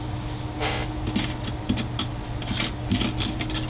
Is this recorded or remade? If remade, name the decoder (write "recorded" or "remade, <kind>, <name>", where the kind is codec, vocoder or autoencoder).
recorded